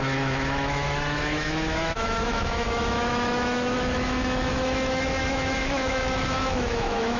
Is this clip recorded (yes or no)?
no